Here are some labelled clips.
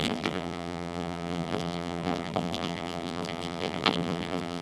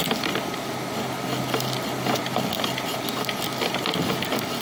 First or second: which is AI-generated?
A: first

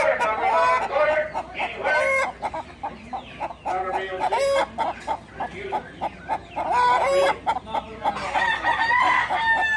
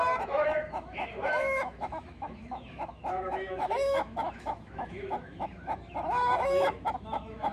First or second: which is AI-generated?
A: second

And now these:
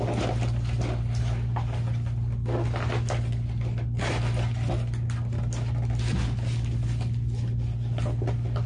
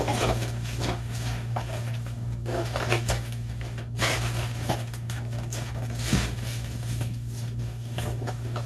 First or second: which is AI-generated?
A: second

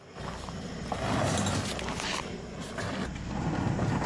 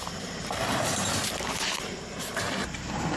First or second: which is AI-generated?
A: second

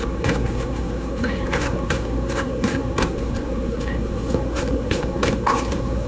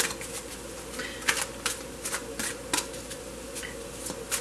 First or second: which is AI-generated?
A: first